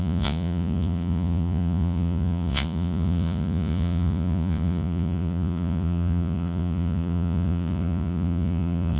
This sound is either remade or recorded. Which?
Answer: remade